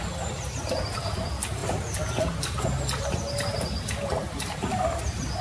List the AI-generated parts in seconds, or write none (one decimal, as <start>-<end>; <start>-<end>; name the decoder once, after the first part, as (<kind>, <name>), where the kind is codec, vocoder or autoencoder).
none